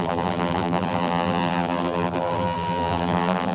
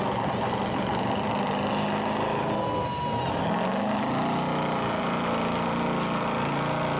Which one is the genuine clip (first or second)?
second